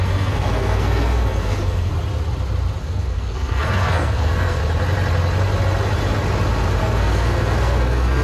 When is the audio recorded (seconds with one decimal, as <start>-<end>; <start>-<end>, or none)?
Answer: 1.9-2.8; 4.6-6.8